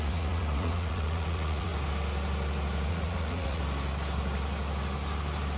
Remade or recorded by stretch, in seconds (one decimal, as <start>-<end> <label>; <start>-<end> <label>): 0.0-1.7 remade; 1.7-2.9 recorded; 2.9-3.6 remade; 3.6-5.6 recorded